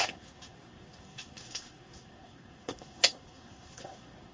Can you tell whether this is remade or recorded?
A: remade